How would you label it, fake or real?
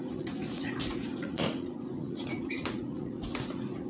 fake